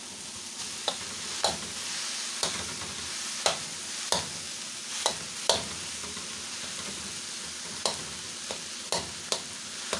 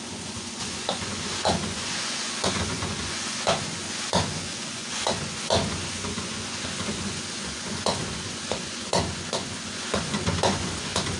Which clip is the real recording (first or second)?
first